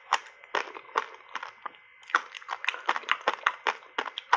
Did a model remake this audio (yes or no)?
no